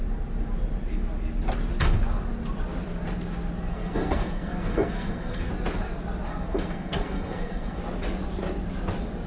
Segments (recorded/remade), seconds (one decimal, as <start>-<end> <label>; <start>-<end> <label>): 0.0-3.7 recorded; 3.7-5.5 remade; 5.5-6.3 recorded; 6.3-7.8 remade; 7.8-9.3 recorded